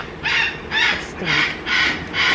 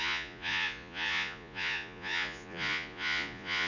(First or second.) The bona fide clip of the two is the first